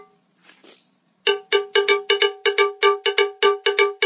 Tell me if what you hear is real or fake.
real